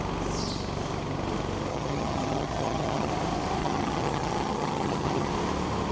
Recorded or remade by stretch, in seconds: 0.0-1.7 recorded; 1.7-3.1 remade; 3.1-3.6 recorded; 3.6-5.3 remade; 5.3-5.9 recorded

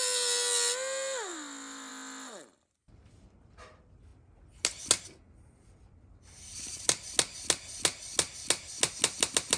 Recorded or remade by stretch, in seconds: 0.0-9.6 recorded

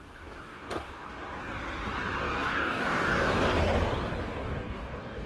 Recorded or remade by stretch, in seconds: 0.0-1.4 remade; 1.4-2.2 recorded; 2.2-3.5 remade; 3.5-4.2 recorded; 4.2-5.3 remade

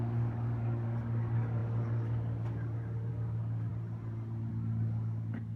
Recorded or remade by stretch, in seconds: 0.0-3.7 remade; 3.7-4.5 recorded; 4.5-5.6 remade

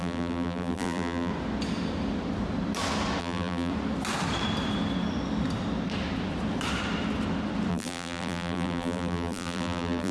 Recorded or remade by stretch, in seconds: 0.0-1.3 remade; 1.3-3.2 recorded; 3.2-3.7 remade; 3.7-7.7 recorded; 7.7-10.1 remade

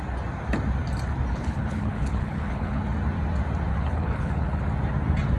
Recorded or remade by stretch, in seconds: 0.0-1.3 recorded; 1.3-2.8 remade; 2.8-3.7 recorded; 3.7-4.6 remade; 4.6-5.4 recorded

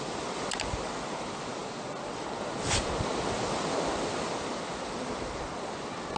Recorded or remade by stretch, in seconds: 0.0-6.2 recorded

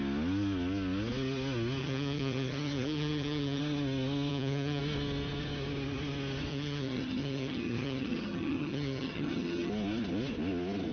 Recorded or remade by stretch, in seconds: 0.0-1.8 recorded; 1.8-3.6 remade; 3.6-4.3 recorded; 4.3-4.8 remade; 4.8-6.5 recorded; 6.5-9.7 remade; 9.7-10.9 recorded